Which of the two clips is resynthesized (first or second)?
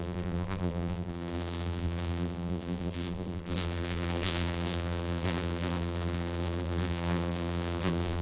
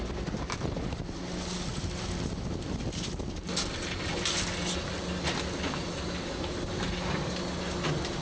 first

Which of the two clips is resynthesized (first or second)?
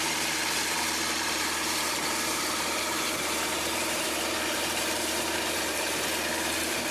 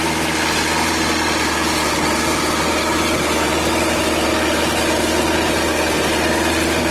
first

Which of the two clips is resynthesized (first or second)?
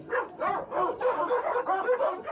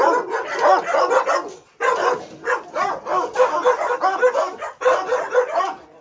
first